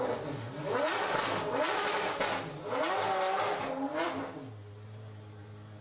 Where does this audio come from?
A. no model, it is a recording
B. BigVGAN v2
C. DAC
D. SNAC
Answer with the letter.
A